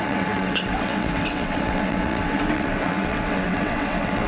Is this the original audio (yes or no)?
no